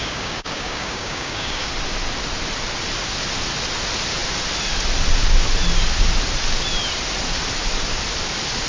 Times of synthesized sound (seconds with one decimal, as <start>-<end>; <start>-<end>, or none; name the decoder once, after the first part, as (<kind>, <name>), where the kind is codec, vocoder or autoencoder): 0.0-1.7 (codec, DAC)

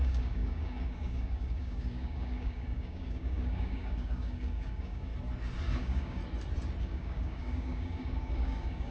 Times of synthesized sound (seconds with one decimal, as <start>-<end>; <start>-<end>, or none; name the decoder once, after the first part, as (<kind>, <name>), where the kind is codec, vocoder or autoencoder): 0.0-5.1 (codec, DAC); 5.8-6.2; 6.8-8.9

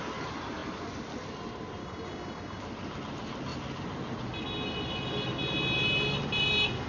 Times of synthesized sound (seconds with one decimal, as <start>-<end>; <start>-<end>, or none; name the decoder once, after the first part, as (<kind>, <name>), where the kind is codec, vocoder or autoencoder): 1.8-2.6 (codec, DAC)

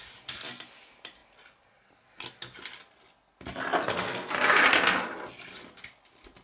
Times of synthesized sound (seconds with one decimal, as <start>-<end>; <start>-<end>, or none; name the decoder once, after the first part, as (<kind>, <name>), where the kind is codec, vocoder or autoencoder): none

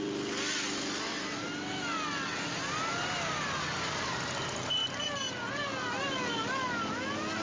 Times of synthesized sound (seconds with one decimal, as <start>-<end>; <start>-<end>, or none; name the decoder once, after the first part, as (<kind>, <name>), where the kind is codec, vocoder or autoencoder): none

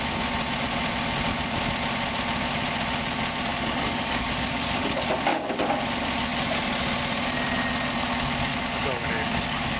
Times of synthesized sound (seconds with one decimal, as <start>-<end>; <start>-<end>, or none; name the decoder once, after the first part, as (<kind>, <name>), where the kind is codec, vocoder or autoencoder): 3.5-5.1 (codec, DAC); 8.5-9.8

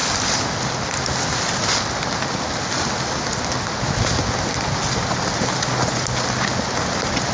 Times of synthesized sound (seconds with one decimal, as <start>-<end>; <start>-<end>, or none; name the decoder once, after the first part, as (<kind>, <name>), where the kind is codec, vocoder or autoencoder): none

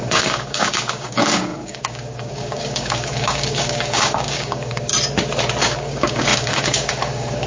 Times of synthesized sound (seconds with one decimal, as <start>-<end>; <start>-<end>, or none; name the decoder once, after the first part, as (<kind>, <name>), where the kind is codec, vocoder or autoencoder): 0.0-4.9 (codec, DAC); 5.6-7.5